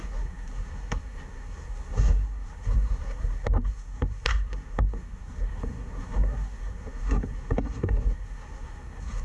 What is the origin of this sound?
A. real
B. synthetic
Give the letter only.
B